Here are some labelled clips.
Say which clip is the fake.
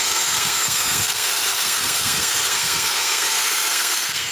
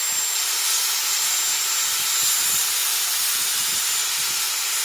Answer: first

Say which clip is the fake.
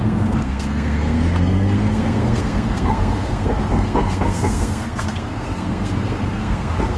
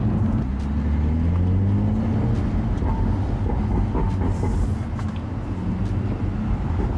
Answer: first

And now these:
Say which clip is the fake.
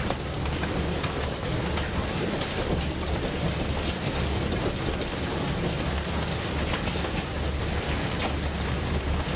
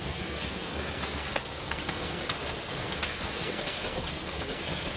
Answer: second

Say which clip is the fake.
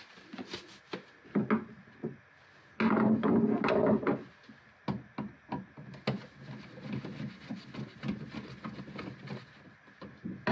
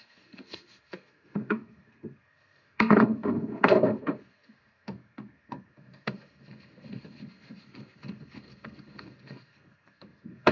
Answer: second